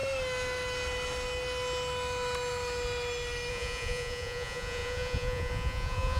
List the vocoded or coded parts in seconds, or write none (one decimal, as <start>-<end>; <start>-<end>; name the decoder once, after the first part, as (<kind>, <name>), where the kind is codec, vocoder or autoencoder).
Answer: 3.5-6.2 (vocoder, Vocos)